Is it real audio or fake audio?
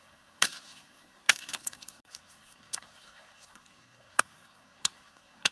fake